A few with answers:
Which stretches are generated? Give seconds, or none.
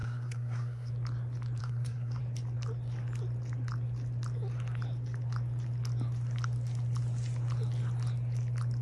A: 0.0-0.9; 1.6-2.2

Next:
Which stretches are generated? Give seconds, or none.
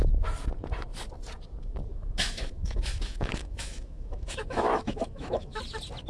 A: 1.9-5.6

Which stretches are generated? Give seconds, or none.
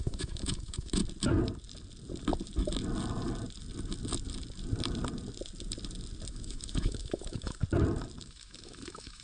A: 0.0-1.0; 6.3-7.6; 8.2-9.2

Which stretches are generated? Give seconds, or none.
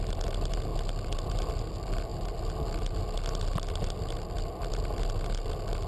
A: none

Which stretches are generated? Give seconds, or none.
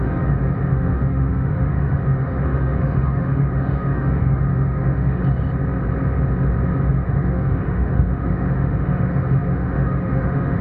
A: 0.0-5.2; 6.9-10.6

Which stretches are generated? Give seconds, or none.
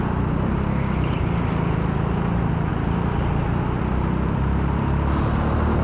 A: none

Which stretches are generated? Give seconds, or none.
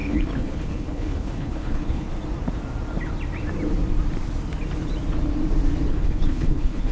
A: 0.0-2.1; 5.9-6.9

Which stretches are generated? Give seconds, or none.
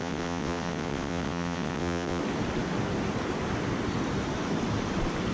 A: 0.0-2.2